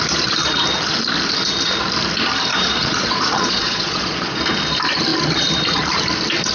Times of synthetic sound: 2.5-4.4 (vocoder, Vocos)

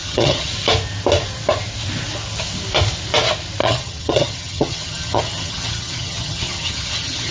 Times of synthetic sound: 0.0-0.5 (vocoder, HiFi-GAN); 3.6-7.3